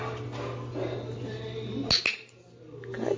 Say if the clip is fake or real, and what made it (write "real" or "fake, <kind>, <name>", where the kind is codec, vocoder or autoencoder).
real